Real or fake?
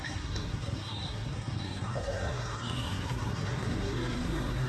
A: fake